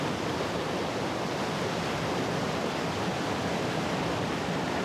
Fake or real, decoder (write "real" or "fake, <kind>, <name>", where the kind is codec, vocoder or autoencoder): real